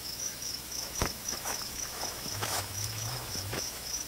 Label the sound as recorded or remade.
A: remade